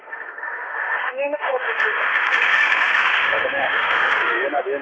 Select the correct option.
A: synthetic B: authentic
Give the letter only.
A